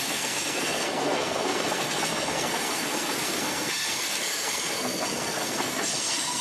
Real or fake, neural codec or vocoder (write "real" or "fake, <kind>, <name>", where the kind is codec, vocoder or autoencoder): fake, codec, SNAC